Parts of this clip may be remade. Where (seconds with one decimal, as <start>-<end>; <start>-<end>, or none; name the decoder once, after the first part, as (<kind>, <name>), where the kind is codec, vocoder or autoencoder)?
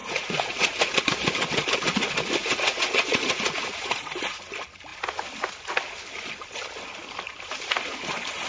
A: 0.0-1.0 (vocoder, Vocos); 2.4-4.4